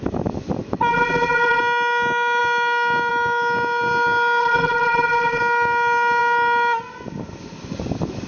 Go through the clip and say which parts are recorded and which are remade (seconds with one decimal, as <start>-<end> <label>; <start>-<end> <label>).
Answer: 0.0-0.9 recorded; 0.9-1.6 remade; 1.6-4.4 recorded; 4.4-5.4 remade; 5.4-8.3 recorded